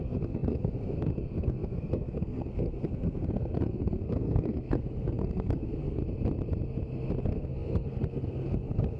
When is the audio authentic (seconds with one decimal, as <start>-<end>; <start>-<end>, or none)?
6.0-7.2